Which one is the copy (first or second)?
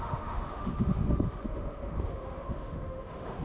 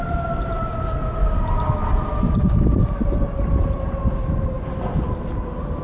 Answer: first